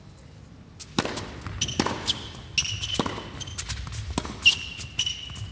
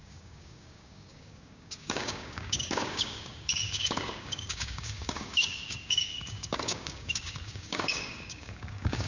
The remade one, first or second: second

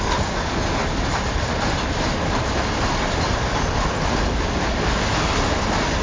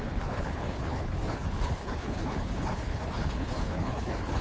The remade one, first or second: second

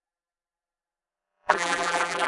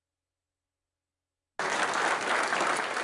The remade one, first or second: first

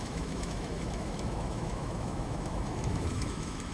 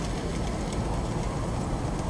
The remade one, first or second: first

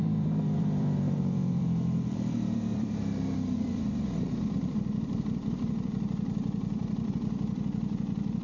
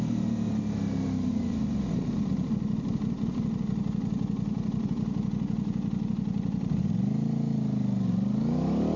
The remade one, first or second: first